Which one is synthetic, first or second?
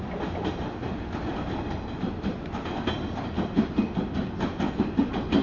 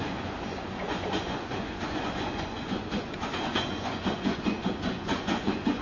second